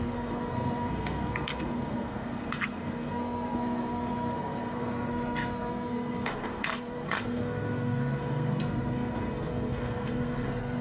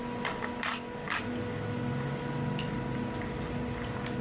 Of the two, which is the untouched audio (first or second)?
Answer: second